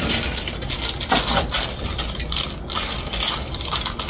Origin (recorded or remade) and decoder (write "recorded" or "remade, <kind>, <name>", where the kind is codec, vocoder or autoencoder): recorded